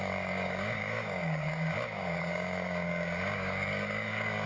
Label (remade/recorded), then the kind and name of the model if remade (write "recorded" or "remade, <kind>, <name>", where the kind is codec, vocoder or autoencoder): remade, codec, DAC